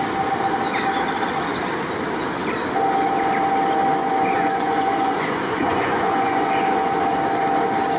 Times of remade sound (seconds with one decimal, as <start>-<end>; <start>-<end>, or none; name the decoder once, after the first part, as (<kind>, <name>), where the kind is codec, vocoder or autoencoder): 4.0-7.0 (vocoder, Vocos)